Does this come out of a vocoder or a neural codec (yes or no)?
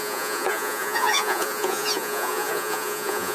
yes